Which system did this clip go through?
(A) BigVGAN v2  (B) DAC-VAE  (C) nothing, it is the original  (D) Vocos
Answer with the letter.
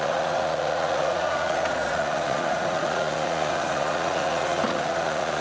D